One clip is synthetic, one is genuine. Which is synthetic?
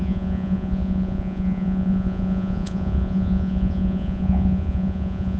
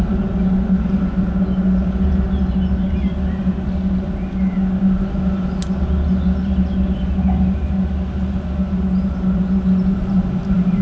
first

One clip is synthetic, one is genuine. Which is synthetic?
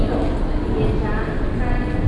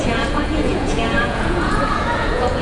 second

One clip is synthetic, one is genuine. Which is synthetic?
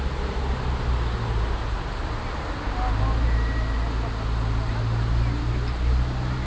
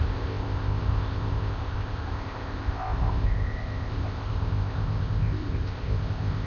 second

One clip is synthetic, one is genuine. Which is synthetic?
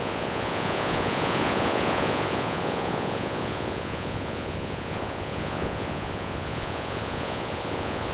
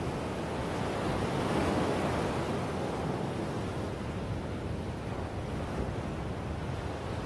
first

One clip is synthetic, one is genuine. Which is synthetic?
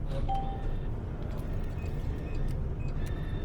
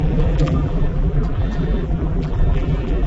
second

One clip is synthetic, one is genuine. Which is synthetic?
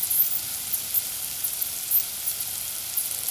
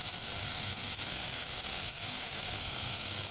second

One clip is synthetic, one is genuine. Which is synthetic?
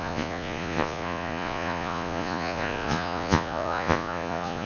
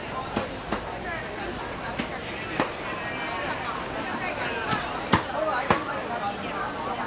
first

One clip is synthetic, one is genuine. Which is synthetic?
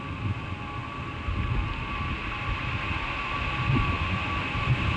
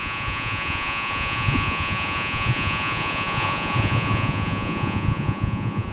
second